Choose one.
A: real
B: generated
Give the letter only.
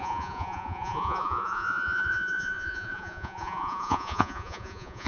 B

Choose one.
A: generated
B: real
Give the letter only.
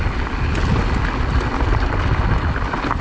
B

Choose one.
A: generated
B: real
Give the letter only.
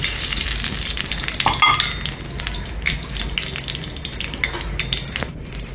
B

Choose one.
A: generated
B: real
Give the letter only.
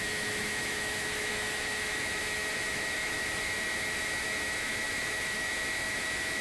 A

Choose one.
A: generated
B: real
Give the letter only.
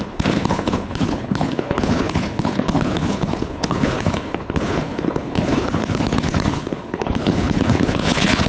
A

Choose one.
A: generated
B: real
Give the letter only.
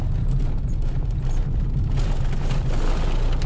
B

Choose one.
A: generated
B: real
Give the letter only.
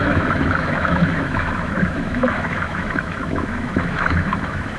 A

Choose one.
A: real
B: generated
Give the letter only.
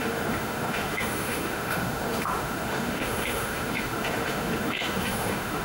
B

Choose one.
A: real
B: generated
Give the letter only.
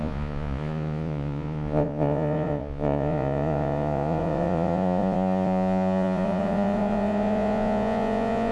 B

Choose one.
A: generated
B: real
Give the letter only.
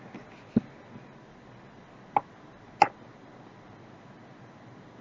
B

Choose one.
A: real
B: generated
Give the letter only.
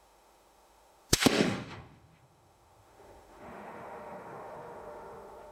B